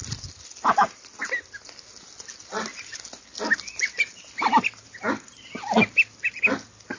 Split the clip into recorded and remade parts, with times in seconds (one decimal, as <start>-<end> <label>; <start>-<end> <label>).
0.0-7.0 recorded